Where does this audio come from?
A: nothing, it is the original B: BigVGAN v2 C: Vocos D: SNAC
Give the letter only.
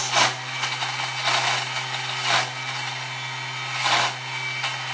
A